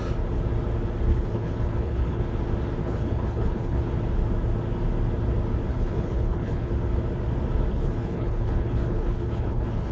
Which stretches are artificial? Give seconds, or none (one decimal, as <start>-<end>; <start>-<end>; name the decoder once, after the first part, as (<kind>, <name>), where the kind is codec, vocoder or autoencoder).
1.1-2.2 (codec, HILCodec); 2.8-3.8; 5.7-6.7; 7.7-9.9